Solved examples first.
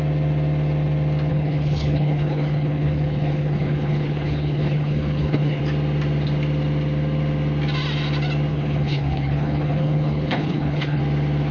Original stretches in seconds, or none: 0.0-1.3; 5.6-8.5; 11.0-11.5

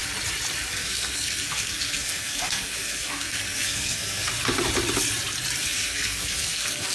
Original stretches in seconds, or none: 0.0-0.7; 4.3-5.6

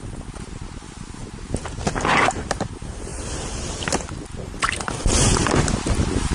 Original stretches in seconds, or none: 0.0-6.3

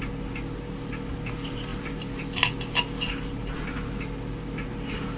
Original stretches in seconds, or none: 0.0-5.2

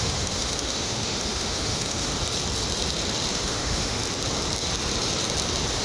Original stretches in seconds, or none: 2.1-3.3; 4.0-5.8

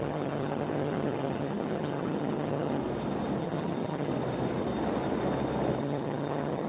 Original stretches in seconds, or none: 2.8-3.4; 4.1-5.8

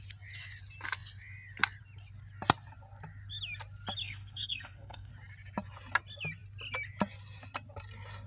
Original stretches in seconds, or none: 0.0-4.0; 5.1-8.3